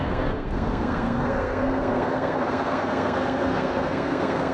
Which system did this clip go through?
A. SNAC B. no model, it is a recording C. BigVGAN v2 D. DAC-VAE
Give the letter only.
A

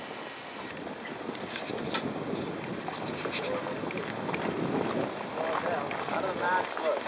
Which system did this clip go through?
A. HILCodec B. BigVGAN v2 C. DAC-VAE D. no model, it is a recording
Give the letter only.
D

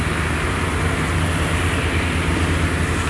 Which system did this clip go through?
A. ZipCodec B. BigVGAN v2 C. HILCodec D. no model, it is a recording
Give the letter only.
D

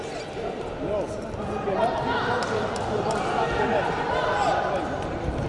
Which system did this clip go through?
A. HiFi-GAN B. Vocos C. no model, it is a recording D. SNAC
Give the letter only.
C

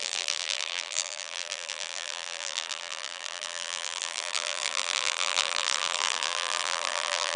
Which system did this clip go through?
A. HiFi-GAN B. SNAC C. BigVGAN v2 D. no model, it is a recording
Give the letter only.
C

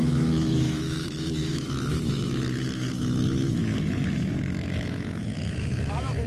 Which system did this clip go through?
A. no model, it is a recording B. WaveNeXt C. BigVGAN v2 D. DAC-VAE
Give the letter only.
D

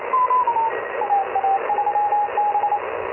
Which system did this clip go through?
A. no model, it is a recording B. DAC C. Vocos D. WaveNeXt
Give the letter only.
A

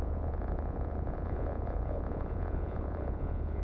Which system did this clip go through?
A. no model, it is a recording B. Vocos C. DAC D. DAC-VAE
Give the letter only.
B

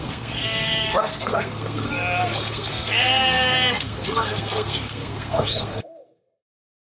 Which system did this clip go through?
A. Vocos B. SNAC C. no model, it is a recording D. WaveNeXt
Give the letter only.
B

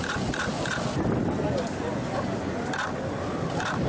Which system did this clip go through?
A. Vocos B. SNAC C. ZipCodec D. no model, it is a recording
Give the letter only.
D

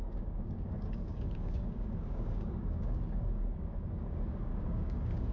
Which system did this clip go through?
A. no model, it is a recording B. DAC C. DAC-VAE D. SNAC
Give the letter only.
B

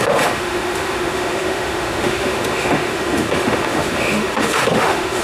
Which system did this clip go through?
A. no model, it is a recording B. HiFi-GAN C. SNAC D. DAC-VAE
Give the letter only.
D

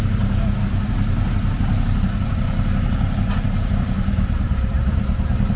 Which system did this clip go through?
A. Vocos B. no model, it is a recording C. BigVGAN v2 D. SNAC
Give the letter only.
C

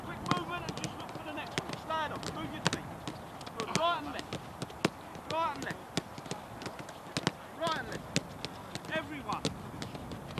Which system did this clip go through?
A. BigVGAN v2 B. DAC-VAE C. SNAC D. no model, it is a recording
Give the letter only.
D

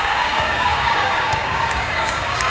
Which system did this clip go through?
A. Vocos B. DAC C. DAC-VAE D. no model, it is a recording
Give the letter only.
B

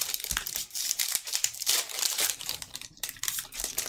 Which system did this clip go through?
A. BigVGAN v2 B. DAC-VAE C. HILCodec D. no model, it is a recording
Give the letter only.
A